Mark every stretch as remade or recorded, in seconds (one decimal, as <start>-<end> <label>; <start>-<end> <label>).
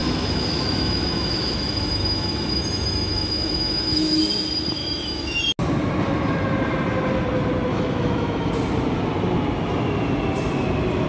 0.0-4.2 remade; 4.2-4.8 recorded; 4.8-5.4 remade; 5.4-7.7 recorded; 7.7-8.5 remade; 8.5-11.1 recorded